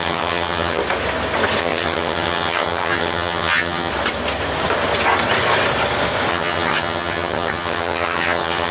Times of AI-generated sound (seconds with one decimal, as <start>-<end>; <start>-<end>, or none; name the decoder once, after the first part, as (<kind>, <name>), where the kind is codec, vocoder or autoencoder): 0.0-0.8 (vocoder, HiFi-GAN); 1.6-3.9; 6.3-8.7